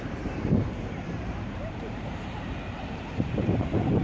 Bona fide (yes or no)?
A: no